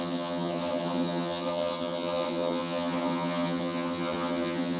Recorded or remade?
remade